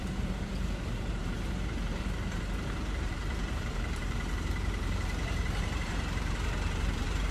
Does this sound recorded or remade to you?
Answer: remade